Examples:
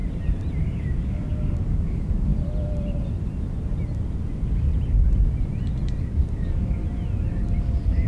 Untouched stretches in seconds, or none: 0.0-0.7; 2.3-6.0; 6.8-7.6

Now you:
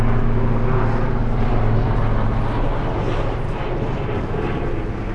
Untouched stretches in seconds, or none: 0.0-1.2; 4.3-5.1

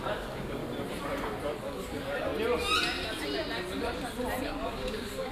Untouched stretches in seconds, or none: 0.6-1.5; 2.3-4.4